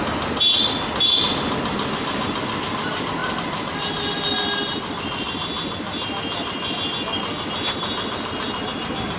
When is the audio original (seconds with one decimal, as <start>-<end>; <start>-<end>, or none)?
0.0-9.2